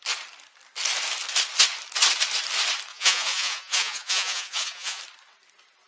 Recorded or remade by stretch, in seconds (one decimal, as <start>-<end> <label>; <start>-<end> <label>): 0.0-2.9 recorded; 2.9-5.0 remade; 5.0-5.9 recorded